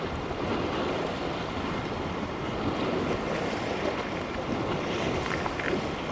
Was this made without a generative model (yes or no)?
yes